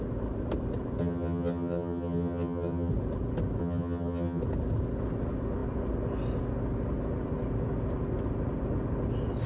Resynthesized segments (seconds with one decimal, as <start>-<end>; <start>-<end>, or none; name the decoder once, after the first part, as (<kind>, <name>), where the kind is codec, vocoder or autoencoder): 1.0-2.9 (vocoder, HiFi-GAN); 3.6-4.4